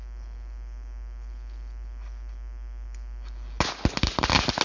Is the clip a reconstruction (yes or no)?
no